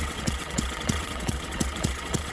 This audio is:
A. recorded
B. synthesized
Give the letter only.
B